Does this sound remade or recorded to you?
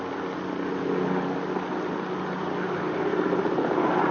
recorded